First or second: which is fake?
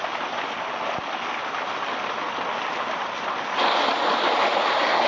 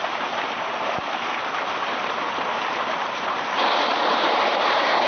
second